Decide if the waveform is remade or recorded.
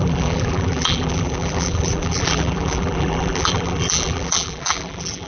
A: remade